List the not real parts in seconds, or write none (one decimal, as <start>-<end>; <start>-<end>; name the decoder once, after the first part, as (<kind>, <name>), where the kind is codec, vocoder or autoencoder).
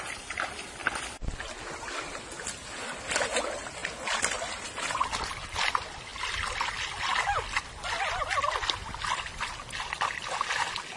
none